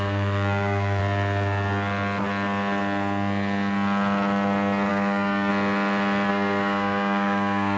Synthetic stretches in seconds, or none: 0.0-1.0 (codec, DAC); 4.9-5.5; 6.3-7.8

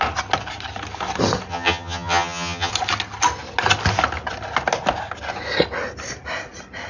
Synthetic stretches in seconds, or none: 1.5-2.7 (vocoder, HiFi-GAN)

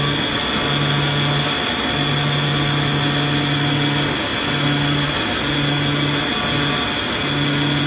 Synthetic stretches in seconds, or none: none